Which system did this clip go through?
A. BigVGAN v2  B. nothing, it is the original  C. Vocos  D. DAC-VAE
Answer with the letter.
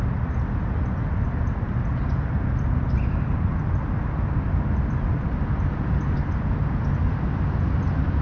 B